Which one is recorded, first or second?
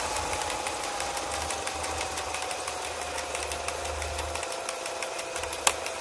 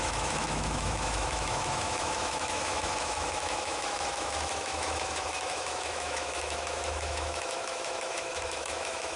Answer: first